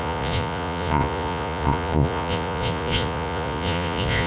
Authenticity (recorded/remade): remade